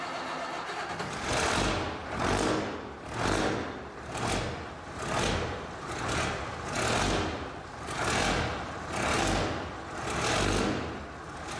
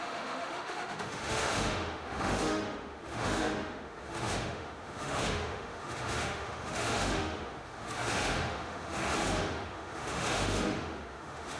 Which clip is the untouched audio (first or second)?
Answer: first